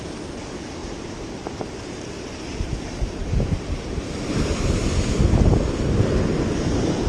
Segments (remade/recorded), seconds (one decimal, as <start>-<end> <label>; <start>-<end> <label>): 0.0-0.8 recorded; 0.8-2.4 remade; 2.4-7.1 recorded